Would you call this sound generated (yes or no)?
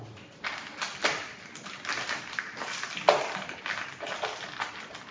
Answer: no